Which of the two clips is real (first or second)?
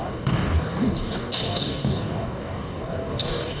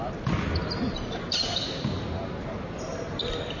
second